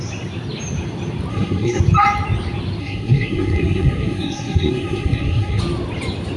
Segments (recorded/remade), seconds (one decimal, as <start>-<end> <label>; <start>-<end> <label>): 0.0-1.3 recorded; 1.3-1.8 remade; 1.8-2.8 recorded; 2.8-5.6 remade; 5.6-6.4 recorded